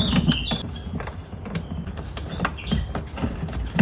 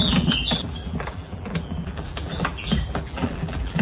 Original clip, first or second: first